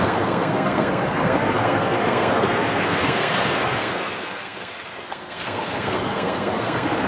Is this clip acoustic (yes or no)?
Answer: no